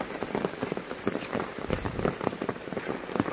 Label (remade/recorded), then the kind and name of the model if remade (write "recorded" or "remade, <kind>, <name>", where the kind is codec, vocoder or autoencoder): remade, vocoder, BigVGAN v2